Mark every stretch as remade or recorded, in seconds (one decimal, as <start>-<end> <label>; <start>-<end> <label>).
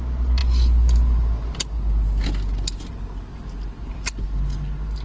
0.0-5.0 recorded